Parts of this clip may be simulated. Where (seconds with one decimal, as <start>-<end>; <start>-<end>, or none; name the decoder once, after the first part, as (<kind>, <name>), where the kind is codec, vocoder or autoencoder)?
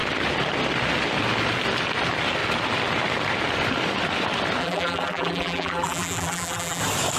4.6-6.8 (vocoder, BigVGAN v2)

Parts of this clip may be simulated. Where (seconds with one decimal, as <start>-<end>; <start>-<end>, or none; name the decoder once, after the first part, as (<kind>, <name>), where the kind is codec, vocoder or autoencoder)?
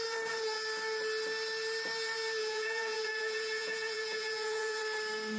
2.4-4.8 (vocoder, Vocos)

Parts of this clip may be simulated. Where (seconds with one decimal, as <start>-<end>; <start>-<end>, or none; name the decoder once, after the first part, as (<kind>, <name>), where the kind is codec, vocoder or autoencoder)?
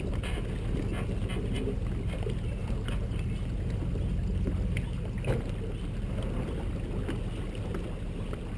none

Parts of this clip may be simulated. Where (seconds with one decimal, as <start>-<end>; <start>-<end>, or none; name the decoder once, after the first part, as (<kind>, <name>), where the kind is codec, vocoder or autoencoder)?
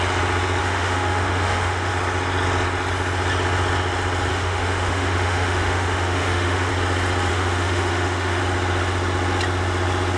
0.6-1.9 (autoencoder, DAC-VAE); 4.3-6.7; 7.3-8.4